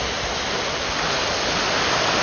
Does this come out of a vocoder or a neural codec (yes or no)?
no